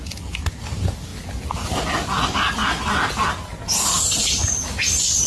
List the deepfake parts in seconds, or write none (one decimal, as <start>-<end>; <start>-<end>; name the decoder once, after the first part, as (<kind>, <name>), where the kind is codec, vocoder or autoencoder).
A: none